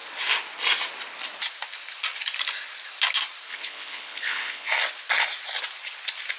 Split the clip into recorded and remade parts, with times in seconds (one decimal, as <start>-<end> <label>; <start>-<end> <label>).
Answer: 0.0-3.5 recorded; 3.5-4.7 remade; 4.7-6.4 recorded